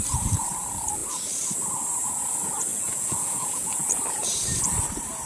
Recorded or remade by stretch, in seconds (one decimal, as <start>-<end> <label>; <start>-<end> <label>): 0.0-2.7 recorded; 2.7-3.9 remade; 3.9-5.3 recorded